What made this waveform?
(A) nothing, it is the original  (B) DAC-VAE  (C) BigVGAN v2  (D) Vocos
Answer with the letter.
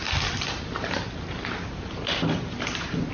A